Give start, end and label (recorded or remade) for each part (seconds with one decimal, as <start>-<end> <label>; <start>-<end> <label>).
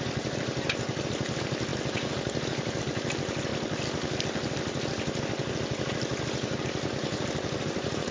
0.0-3.5 remade; 3.5-6.9 recorded; 6.9-8.1 remade